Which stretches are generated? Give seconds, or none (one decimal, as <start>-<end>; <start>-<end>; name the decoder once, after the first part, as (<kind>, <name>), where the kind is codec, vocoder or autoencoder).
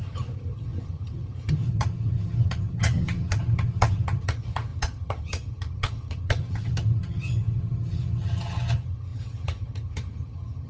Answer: 0.0-10.7 (vocoder, HiFi-GAN)